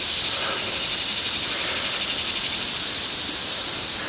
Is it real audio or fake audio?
real